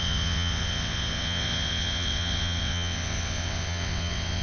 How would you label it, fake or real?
fake